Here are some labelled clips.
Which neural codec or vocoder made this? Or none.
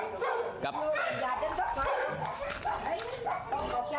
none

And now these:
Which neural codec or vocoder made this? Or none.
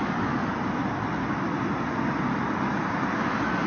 none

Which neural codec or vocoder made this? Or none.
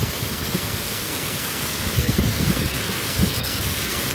codec, SNAC